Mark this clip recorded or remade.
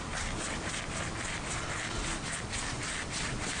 recorded